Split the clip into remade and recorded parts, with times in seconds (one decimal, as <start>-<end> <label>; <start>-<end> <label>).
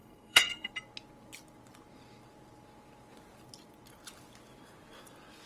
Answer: 0.0-0.7 remade; 0.7-5.5 recorded